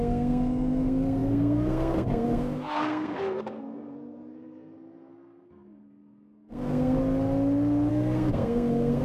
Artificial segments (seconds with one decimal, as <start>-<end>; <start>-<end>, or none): 0.0-7.0; 7.9-9.0